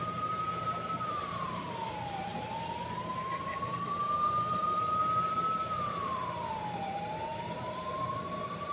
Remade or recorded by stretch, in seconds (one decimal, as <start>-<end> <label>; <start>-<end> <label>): 0.0-8.7 remade